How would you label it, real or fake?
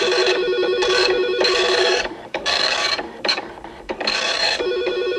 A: fake